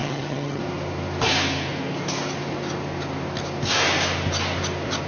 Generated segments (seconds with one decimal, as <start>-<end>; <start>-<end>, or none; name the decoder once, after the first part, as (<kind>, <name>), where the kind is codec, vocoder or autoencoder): 0.0-0.6 (vocoder, HiFi-GAN)